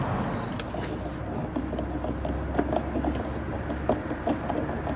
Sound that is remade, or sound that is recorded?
recorded